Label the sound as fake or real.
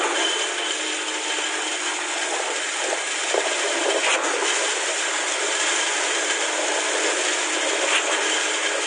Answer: real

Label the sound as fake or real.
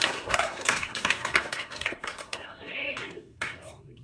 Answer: fake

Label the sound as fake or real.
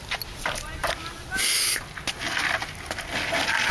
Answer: real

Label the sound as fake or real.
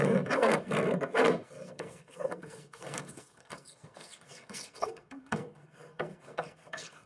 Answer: fake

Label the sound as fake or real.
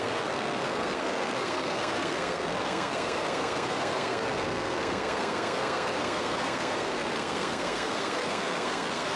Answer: fake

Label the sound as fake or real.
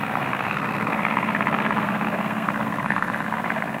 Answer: fake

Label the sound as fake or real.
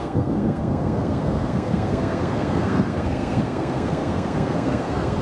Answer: fake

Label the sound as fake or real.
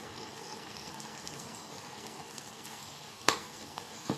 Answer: fake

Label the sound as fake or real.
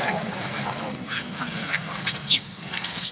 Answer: fake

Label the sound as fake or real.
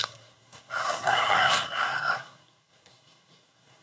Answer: fake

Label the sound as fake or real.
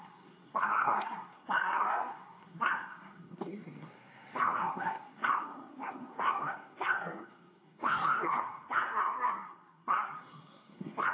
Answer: fake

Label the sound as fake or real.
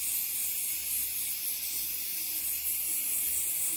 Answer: real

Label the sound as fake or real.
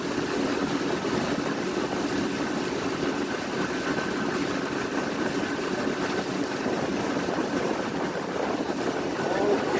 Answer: real